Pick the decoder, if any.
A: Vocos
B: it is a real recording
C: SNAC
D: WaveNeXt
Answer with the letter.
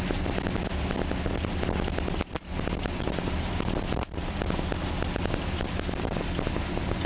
B